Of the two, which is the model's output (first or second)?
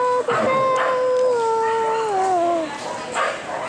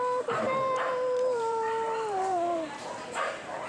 second